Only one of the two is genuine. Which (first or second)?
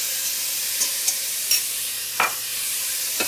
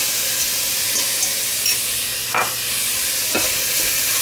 second